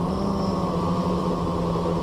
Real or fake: real